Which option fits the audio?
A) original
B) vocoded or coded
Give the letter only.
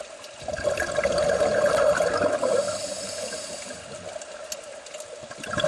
A